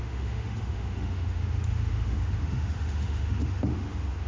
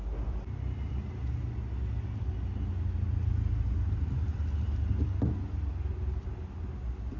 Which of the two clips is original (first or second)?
second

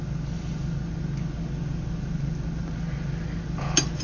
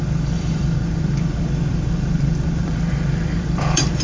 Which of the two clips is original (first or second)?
first